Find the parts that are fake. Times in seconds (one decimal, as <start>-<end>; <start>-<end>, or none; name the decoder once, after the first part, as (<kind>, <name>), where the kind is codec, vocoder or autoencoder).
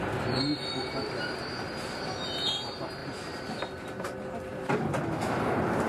none